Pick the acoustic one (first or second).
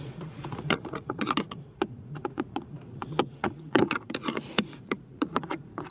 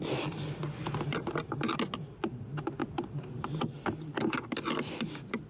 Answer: second